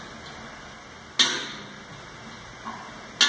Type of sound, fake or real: real